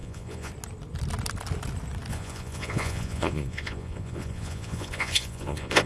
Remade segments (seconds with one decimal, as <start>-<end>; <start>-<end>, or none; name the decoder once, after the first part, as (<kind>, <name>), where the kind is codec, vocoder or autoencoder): 0.0-0.5 (vocoder, Vocos); 2.1-5.9

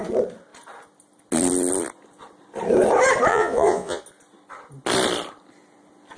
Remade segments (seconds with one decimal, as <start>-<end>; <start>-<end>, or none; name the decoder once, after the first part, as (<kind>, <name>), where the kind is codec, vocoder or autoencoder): 3.3-4.0 (vocoder, Vocos)